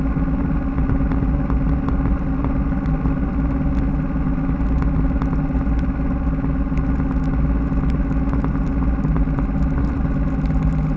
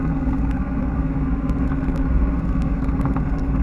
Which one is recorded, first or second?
first